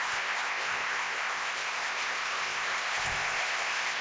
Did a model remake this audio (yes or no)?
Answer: yes